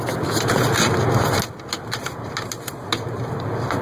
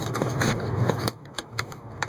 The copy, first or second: second